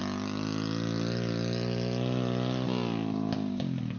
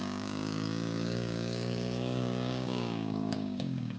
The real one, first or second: first